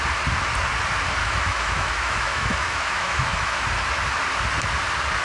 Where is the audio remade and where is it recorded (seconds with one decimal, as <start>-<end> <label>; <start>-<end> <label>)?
0.0-1.2 recorded; 1.2-3.6 remade; 3.6-5.2 recorded